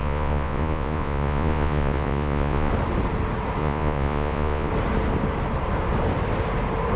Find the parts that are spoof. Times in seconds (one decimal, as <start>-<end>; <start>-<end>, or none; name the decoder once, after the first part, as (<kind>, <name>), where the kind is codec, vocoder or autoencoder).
0.0-2.7 (vocoder, Vocos); 3.6-4.7